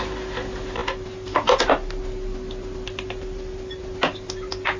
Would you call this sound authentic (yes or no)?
yes